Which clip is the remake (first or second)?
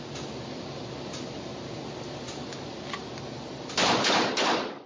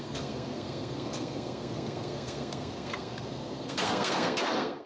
second